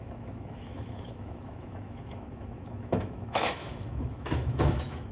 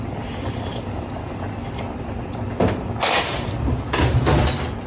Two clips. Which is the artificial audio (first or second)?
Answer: first